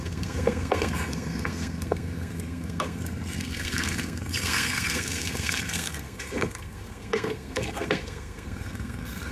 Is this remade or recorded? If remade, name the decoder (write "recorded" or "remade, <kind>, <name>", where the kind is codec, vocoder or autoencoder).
remade, codec, SNAC